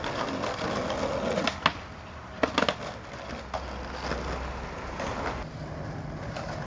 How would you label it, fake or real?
real